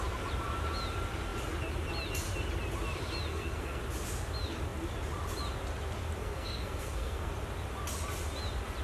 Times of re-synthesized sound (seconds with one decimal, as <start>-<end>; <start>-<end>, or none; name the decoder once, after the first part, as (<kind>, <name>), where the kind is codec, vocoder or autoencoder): 3.3-3.8 (codec, SNAC); 6.2-7.3